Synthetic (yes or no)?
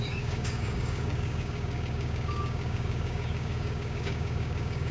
yes